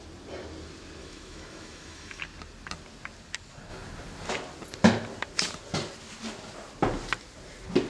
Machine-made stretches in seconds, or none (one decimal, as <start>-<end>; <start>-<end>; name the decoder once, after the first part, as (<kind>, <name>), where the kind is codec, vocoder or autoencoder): 1.0-2.2 (autoencoder, DAC-VAE)